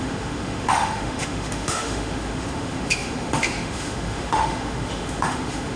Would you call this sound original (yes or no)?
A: no